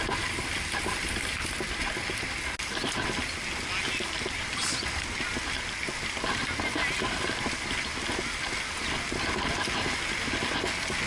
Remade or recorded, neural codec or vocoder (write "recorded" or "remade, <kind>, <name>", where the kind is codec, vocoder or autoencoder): recorded